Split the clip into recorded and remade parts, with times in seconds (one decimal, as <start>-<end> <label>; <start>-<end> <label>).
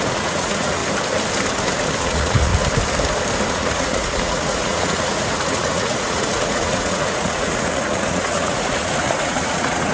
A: 0.0-0.8 remade; 0.8-2.0 recorded; 2.0-2.5 remade; 2.5-3.5 recorded; 3.5-9.9 remade